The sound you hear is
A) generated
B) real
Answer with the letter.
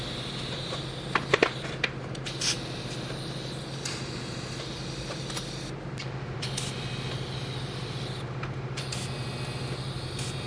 B